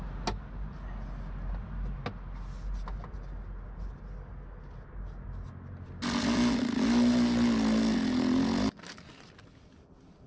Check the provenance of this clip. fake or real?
real